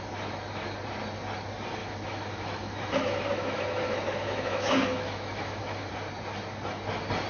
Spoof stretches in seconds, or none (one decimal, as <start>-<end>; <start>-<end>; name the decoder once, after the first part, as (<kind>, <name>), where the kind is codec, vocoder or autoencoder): 1.8-5.9 (autoencoder, DAC-VAE)